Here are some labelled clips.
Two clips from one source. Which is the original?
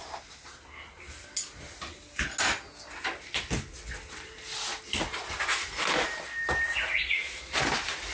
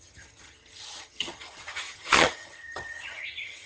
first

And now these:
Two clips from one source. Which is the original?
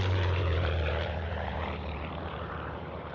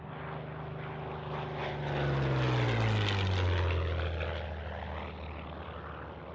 second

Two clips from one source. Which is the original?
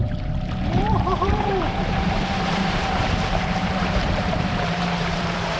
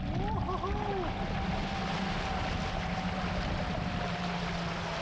second